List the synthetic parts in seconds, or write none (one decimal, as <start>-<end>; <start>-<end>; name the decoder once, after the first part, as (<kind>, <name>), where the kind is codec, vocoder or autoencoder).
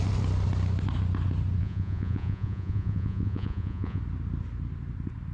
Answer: 1.6-4.0 (vocoder, Vocos)